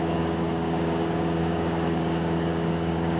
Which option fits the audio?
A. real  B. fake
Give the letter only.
B